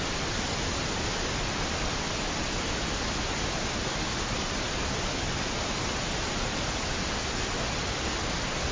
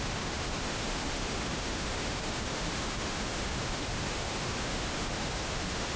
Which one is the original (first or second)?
first